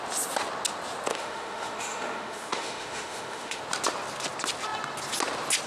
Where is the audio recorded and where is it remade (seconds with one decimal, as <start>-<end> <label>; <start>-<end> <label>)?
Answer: 0.0-1.1 recorded; 1.1-3.6 remade; 3.6-5.7 recorded